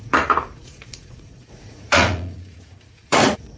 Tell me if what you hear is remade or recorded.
remade